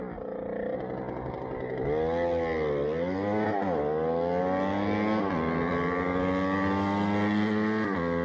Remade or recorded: recorded